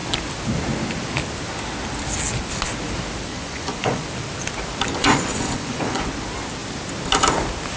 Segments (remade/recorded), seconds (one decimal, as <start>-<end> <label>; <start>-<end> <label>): 0.0-3.3 recorded; 3.3-4.1 remade; 4.1-5.0 recorded; 5.0-6.1 remade; 6.1-7.8 recorded